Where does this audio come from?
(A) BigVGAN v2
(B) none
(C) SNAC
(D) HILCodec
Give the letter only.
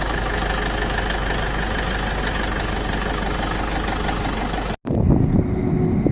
B